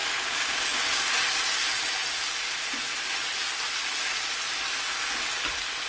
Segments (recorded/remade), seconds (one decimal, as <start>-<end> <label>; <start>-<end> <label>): 0.0-1.0 remade; 1.0-5.9 recorded